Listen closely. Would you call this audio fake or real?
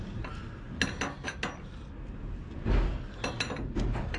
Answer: real